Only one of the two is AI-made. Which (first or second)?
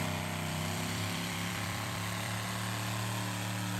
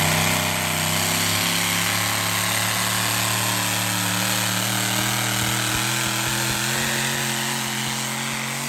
first